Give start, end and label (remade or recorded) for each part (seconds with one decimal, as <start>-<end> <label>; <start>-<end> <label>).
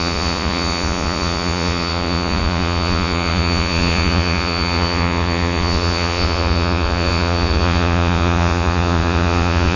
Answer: 0.0-9.8 remade